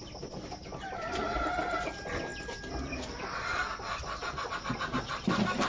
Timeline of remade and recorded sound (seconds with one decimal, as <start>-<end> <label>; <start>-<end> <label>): 0.0-5.7 recorded